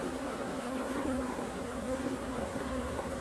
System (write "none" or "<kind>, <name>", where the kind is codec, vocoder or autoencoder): codec, SNAC